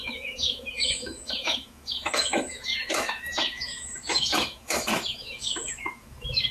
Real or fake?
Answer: fake